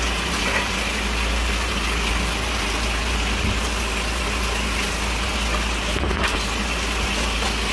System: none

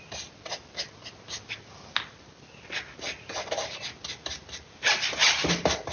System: none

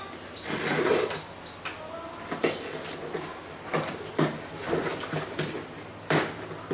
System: none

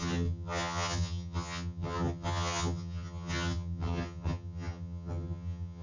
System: vocoder, HiFi-GAN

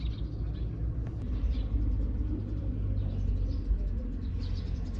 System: none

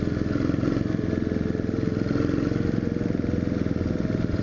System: none